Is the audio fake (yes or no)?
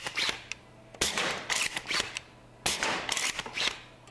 no